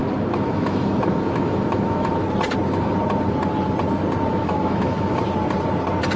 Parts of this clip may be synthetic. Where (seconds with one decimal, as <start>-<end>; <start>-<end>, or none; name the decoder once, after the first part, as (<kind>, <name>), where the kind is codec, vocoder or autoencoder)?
0.0-2.1 (autoencoder, DAC-VAE); 4.3-5.2